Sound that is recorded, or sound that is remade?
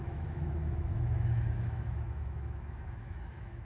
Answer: remade